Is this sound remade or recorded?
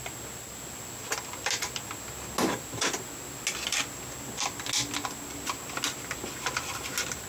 recorded